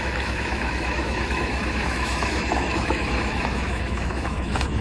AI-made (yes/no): yes